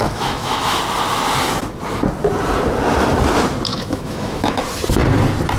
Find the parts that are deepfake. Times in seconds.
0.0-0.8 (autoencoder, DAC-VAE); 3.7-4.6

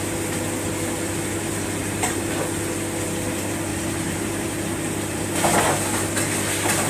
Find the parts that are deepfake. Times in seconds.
1.8-2.3 (vocoder, BigVGAN v2); 3.7-5.3

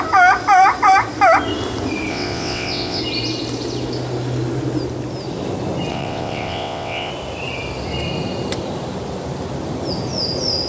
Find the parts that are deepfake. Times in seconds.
2.1-3.0 (vocoder, WaveNeXt); 5.9-7.1

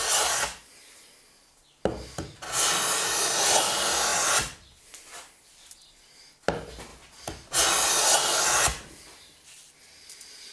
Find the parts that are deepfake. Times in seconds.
4.1-5.5 (vocoder, BigVGAN v2)

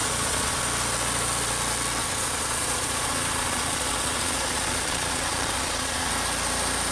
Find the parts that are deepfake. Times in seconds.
0.0-0.6 (vocoder, Vocos); 2.0-6.1

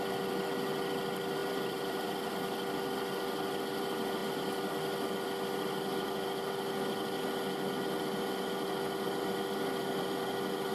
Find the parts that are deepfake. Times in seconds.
1.4-2.3 (vocoder, BigVGAN v2)

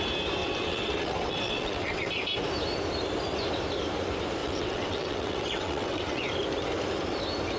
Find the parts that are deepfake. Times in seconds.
0.4-2.1 (vocoder, WaveNeXt); 4.4-6.2